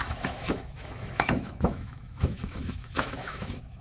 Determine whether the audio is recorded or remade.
remade